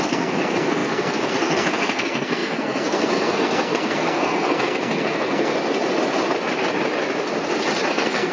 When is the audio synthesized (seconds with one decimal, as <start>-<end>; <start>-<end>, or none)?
0.0-5.5; 7.9-8.3